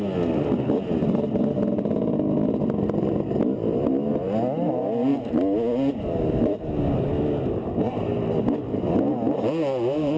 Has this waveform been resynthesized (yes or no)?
no